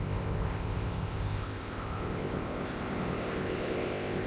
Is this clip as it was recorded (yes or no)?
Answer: no